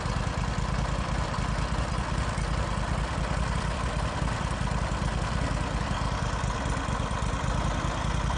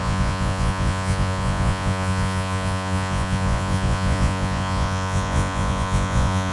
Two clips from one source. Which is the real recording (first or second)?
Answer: first